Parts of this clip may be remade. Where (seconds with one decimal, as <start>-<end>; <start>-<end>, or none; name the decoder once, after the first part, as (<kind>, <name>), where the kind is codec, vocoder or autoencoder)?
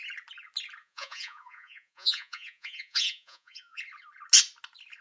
0.8-3.8 (vocoder, Vocos)